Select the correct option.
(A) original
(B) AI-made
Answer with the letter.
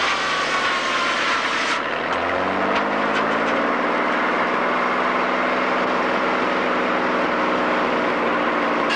A